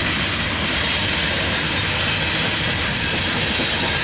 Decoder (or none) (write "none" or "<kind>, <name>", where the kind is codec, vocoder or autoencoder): none